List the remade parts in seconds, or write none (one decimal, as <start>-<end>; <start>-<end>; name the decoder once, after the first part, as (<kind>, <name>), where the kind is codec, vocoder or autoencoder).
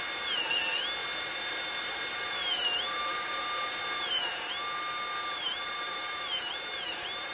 1.0-4.5 (vocoder, BigVGAN v2); 5.2-7.3